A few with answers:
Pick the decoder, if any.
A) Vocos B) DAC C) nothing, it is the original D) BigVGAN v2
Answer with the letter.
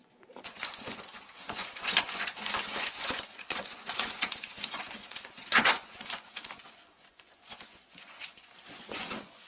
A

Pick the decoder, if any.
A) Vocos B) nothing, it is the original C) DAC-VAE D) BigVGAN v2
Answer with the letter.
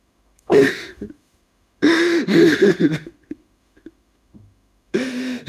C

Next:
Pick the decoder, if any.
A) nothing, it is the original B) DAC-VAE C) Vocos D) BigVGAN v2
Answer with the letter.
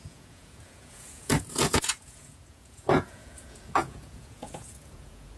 C